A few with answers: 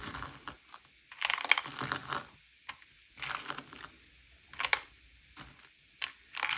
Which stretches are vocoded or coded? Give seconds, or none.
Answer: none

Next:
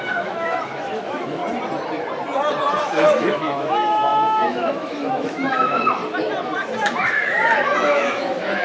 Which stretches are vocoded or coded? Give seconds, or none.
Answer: 0.0-1.4; 2.9-6.0; 7.0-8.6